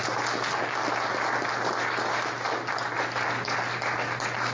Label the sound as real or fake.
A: real